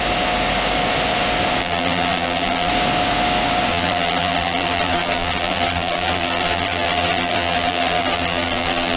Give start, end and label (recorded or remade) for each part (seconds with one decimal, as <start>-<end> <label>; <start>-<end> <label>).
0.0-1.6 recorded; 1.6-2.7 remade; 2.7-3.7 recorded; 3.7-9.0 remade